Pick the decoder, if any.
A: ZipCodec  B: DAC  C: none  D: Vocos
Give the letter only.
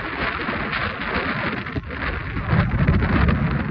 C